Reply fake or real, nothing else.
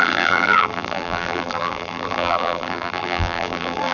fake